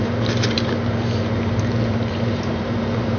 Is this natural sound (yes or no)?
no